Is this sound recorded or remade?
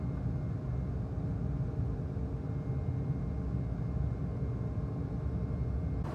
recorded